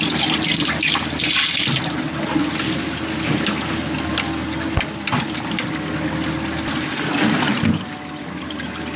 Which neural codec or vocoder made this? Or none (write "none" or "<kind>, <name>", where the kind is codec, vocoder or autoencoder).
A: none